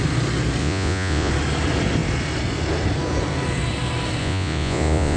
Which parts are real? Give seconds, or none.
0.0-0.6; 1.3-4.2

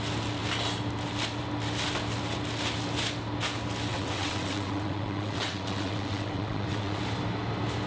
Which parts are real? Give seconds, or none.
0.0-3.9; 7.0-7.9

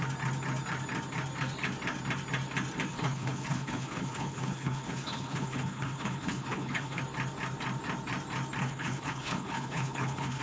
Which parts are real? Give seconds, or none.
0.0-2.9; 7.0-8.6

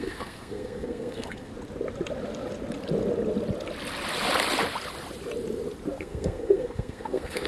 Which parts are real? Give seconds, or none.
1.5-6.0